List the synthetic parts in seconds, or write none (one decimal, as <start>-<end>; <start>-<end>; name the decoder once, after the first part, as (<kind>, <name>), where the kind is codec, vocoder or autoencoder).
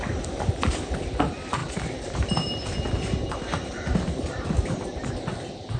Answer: none